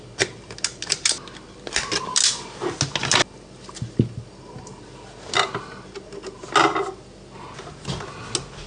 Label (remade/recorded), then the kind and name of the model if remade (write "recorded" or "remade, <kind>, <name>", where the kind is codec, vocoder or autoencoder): recorded